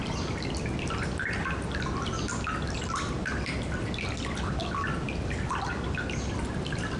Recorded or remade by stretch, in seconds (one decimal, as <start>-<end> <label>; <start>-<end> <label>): 0.0-7.0 recorded